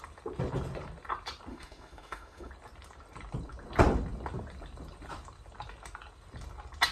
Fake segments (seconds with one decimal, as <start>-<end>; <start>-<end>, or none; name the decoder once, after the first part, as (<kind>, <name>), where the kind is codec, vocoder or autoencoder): 1.5-2.5 (autoencoder, DAC-VAE)